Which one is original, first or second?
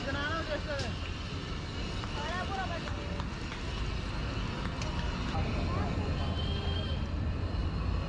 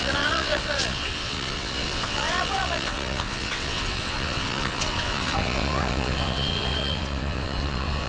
first